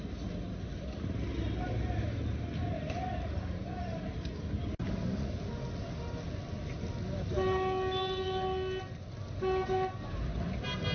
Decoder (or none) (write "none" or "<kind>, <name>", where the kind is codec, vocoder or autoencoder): none